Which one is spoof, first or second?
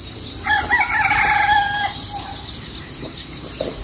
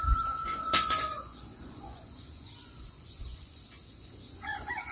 second